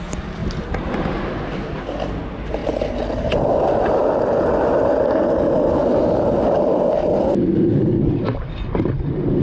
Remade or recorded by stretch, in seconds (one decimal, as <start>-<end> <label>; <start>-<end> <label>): 0.0-0.4 recorded; 0.4-1.0 remade; 1.0-9.4 recorded